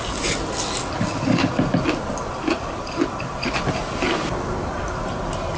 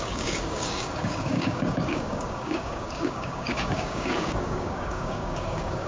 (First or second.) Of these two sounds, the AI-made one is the second